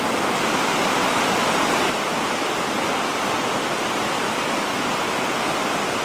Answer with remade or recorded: recorded